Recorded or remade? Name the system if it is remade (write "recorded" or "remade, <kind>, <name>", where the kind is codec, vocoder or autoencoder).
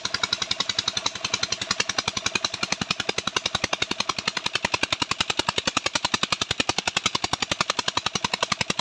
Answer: recorded